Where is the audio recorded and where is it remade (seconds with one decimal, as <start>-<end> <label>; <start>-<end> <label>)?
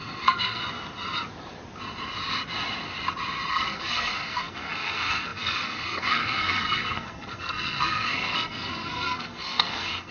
0.0-0.6 remade; 0.6-3.5 recorded; 3.5-10.1 remade